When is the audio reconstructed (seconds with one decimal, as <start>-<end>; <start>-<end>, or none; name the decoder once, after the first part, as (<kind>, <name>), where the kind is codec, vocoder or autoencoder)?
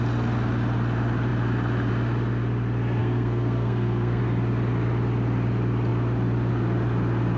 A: 3.0-4.2 (codec, SNAC)